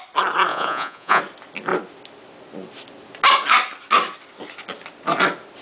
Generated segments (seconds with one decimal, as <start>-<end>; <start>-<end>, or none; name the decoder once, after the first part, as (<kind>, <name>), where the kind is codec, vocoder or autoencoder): 0.5-1.2 (vocoder, Vocos)